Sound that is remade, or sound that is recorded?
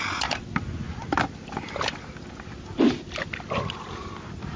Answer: recorded